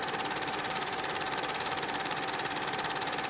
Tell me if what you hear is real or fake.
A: fake